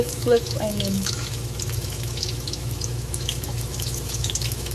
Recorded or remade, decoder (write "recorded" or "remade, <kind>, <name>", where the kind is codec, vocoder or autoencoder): remade, autoencoder, DAC-VAE